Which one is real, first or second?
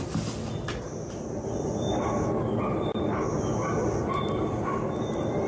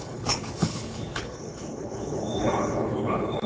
first